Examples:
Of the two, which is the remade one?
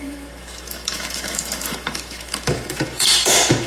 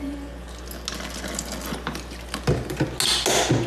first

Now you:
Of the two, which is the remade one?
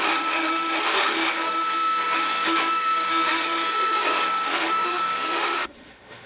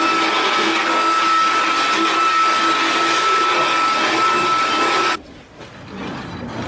first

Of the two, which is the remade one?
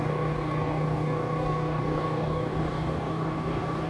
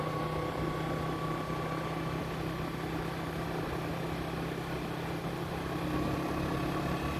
first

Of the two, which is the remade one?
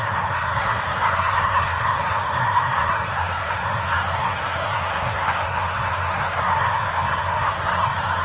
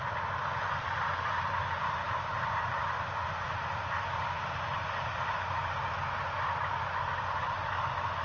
first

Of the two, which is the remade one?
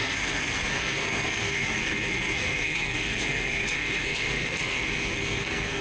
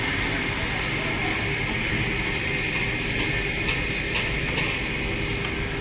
first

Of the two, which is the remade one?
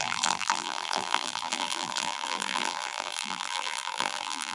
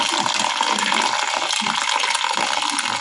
first